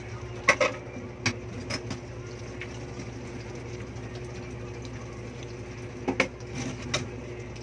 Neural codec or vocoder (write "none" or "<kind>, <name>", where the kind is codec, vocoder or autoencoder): none